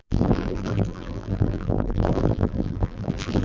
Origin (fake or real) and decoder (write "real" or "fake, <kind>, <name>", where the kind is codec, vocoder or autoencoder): fake, vocoder, BigVGAN v2